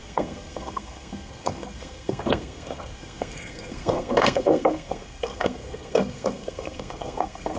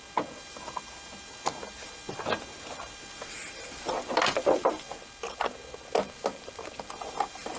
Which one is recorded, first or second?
second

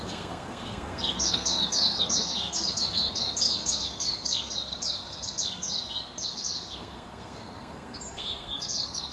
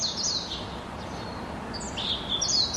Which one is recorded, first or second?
second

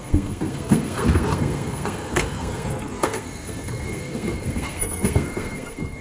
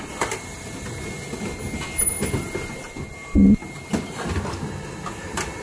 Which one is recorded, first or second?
second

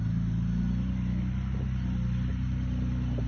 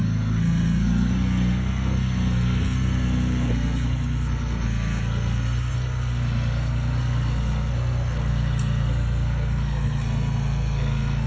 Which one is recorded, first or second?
first